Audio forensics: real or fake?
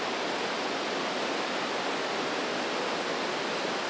real